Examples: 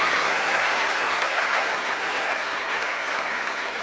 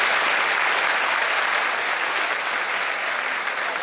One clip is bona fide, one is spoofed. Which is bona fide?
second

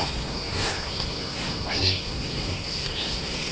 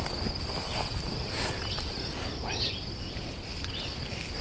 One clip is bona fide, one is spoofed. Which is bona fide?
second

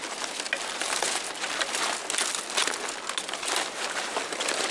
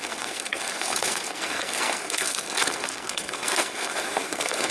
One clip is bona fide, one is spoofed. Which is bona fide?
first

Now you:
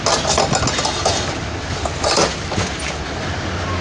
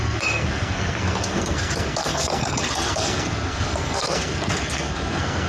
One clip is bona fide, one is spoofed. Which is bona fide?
first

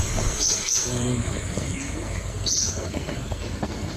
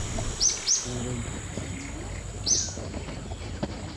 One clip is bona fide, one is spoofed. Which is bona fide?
second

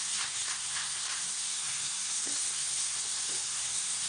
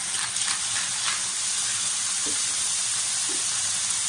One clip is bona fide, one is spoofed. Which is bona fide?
second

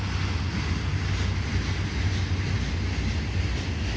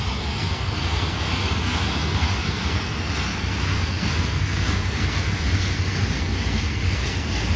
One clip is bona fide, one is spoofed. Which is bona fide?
first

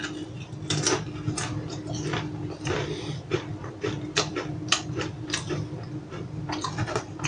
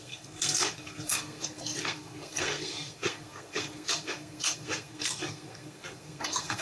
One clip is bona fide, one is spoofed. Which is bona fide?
first